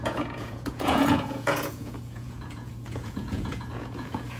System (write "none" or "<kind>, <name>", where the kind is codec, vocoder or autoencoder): vocoder, Vocos